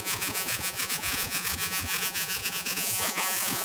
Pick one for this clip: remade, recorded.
remade